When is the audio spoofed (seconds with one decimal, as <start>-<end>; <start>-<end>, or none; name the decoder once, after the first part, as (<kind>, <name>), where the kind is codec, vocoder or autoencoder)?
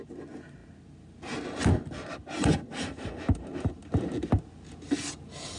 none